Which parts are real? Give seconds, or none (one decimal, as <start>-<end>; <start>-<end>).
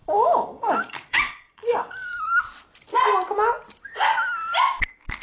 2.4-5.2